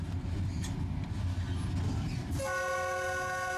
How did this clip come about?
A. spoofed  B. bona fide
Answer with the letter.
B